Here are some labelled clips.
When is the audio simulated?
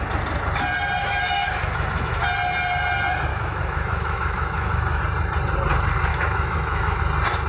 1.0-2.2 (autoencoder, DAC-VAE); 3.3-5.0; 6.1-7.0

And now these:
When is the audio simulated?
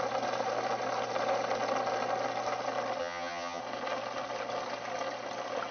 3.0-3.6 (vocoder, HiFi-GAN)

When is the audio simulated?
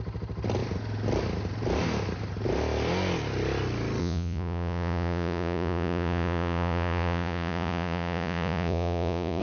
4.0-9.4 (vocoder, Vocos)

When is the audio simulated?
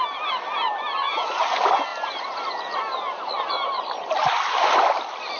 none